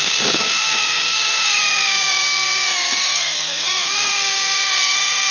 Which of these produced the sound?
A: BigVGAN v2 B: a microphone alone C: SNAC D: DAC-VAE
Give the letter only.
C